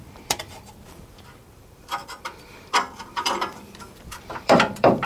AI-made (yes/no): yes